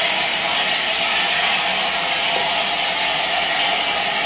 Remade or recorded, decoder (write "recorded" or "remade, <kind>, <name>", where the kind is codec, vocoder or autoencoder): recorded